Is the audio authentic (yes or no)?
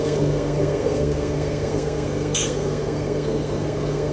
no